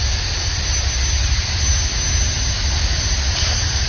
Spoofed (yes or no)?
no